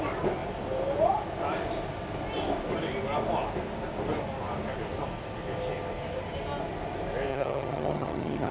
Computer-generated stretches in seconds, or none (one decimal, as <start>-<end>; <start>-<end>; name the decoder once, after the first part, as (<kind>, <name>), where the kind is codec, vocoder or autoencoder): 7.3-8.5 (vocoder, HiFi-GAN)